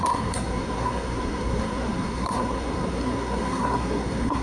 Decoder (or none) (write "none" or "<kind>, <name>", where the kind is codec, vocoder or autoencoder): codec, SNAC